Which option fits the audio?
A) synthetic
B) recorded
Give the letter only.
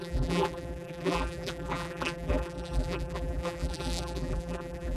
A